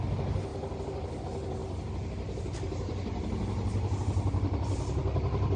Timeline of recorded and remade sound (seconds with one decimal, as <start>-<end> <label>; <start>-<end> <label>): 0.0-5.6 recorded